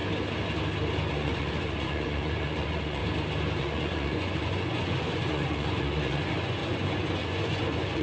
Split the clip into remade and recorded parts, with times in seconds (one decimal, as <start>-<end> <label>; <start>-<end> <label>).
0.0-1.1 recorded; 1.1-3.0 remade; 3.0-3.6 recorded; 3.6-8.0 remade